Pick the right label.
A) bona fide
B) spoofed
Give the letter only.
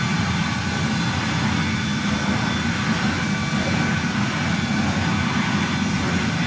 A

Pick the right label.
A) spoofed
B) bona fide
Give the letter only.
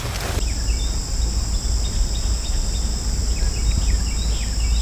B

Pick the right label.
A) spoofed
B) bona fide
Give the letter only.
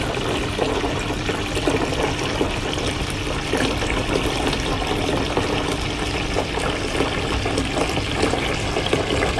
B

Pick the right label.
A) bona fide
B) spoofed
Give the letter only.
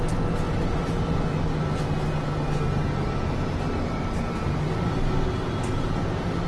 A